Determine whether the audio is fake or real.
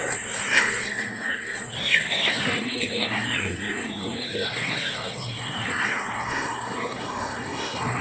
fake